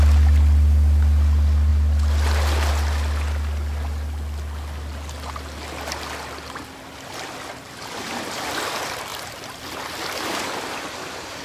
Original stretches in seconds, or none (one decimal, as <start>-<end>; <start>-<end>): 0.0-11.4